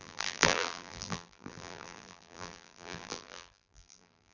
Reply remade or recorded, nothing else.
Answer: remade